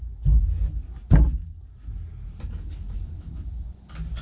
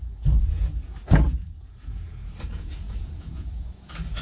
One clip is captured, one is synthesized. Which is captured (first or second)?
first